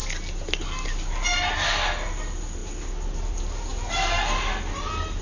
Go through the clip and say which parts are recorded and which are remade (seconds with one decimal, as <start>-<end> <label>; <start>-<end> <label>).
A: 0.0-5.2 recorded